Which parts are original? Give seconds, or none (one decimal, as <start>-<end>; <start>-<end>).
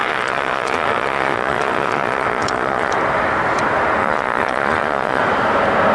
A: 2.9-4.0; 5.2-5.9